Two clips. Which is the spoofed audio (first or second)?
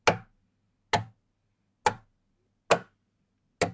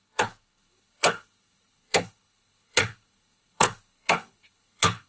second